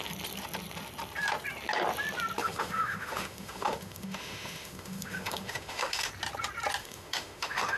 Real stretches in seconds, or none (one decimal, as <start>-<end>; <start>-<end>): 0.0-2.4; 6.1-6.8